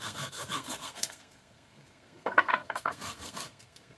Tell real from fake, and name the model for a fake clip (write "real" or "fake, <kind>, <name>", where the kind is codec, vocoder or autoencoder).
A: fake, codec, SNAC